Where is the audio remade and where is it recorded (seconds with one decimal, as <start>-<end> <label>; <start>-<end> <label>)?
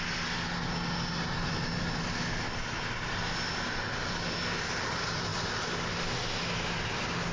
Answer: 0.0-7.3 recorded